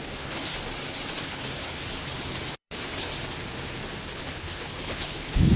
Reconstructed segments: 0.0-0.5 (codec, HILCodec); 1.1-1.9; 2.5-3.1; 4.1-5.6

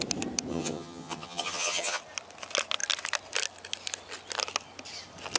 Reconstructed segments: 0.5-2.0 (vocoder, HiFi-GAN)

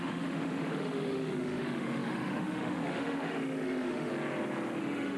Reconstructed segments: 0.0-4.1 (autoencoder, DAC-VAE); 4.8-5.2